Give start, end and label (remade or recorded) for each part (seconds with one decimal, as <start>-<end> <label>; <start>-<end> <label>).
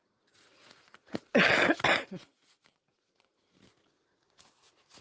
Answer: 0.0-1.3 remade; 1.3-1.9 recorded; 1.9-5.0 remade